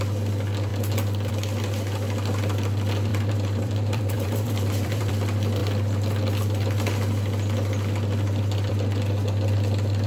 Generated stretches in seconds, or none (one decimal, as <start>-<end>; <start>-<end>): 3.1-5.1